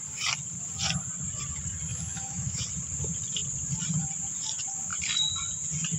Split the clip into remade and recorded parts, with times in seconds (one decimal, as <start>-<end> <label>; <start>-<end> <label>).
0.0-1.9 recorded; 1.9-2.6 remade; 2.6-6.0 recorded